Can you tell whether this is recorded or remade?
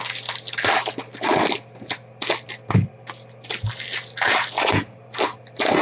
recorded